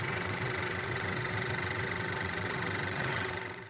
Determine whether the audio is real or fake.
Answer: fake